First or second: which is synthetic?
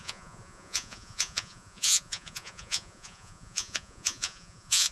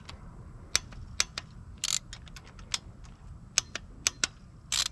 first